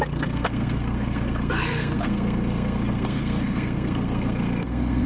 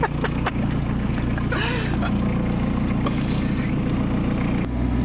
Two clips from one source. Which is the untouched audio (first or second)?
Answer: second